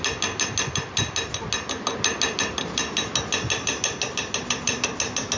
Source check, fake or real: real